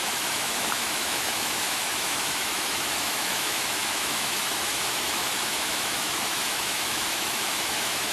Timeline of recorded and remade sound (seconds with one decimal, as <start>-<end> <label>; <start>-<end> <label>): 0.0-8.1 remade